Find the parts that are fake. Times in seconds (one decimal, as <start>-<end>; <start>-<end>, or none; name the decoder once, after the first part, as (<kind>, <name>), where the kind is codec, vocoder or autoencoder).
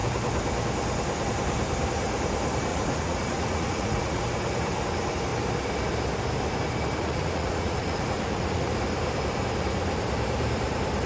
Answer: 2.7-4.2 (vocoder, Vocos); 7.0-8.7